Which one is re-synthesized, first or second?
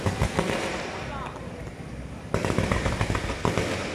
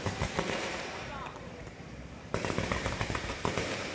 second